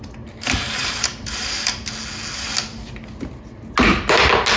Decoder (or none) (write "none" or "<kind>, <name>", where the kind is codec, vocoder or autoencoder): none